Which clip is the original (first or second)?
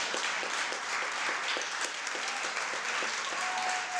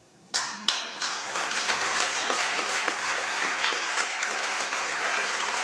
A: first